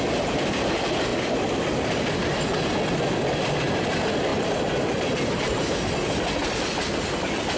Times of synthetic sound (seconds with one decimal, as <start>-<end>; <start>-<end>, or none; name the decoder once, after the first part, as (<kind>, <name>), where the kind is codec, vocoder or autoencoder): none